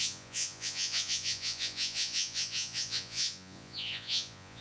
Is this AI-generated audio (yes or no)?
yes